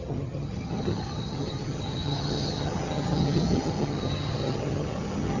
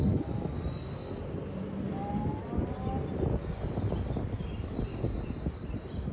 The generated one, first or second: first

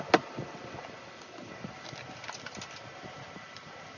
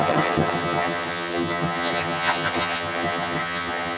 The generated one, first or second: second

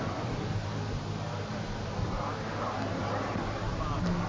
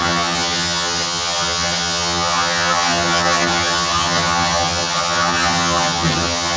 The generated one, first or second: second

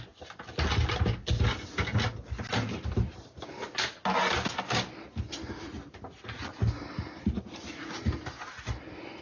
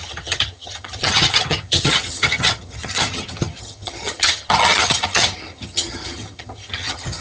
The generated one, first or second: second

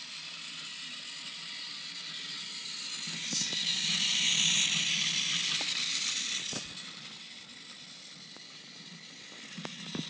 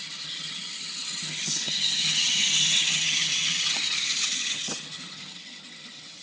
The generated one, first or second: second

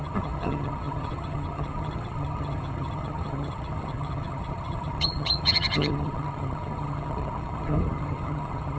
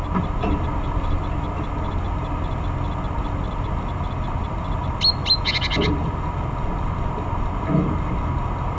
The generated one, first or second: first